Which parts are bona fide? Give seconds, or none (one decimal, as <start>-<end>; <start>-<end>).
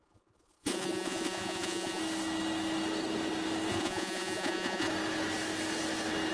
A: 2.0-3.7; 4.9-6.3